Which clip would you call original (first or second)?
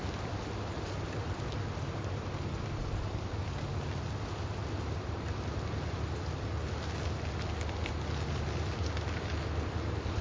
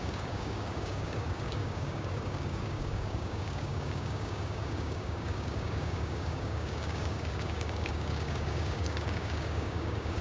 first